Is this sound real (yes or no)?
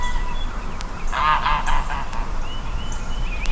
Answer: yes